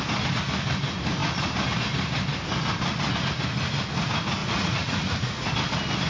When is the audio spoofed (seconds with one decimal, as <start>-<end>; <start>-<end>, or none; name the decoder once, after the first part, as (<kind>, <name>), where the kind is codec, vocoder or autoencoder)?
4.4-5.5 (vocoder, Vocos)

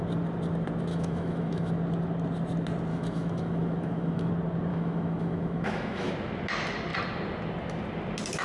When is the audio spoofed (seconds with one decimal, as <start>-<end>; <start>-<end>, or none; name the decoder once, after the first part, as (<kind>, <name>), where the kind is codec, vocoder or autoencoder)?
0.9-1.7 (autoencoder, DAC-VAE); 2.9-4.3; 4.7-6.1

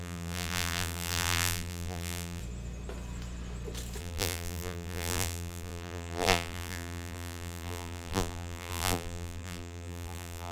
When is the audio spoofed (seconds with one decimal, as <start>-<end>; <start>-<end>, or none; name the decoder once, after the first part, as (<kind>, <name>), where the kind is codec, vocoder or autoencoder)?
0.0-2.4 (vocoder, BigVGAN v2); 4.0-10.5

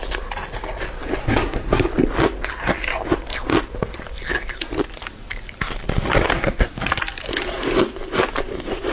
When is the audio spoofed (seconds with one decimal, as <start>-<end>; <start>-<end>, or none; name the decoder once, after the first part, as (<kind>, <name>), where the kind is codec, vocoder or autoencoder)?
1.2-1.9 (codec, SNAC); 6.3-6.9

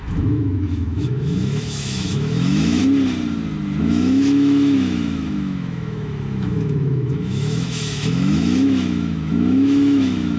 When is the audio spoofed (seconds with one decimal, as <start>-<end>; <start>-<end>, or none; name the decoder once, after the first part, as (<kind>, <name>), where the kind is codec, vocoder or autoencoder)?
0.0-2.8 (autoencoder, DAC-VAE); 3.8-10.4

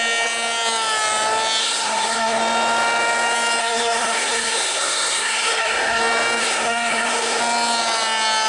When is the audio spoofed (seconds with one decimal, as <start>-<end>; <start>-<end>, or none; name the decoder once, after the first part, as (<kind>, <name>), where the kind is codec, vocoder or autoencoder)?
1.6-2.4 (codec, SNAC); 3.6-6.0; 6.4-7.4